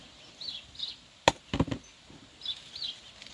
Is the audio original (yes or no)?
yes